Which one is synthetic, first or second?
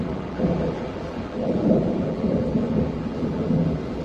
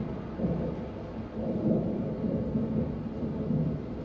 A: first